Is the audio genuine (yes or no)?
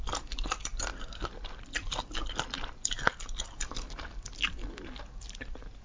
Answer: yes